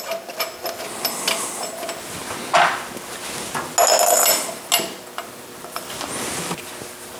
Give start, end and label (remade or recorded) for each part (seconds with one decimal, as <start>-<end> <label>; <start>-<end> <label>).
0.0-7.2 recorded